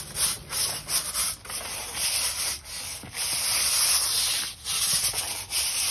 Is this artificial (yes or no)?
no